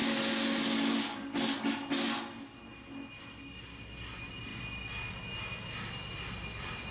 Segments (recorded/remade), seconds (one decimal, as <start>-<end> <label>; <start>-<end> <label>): 0.0-6.9 recorded